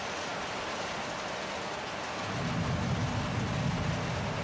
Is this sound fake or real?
real